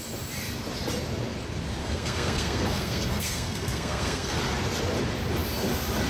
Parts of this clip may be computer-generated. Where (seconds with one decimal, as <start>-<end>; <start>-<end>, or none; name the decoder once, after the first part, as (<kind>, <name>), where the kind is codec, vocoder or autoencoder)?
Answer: 1.8-4.4 (codec, SNAC)